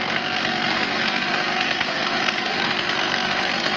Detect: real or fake fake